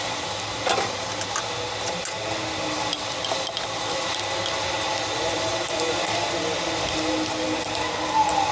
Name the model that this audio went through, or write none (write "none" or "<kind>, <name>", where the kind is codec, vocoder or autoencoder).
none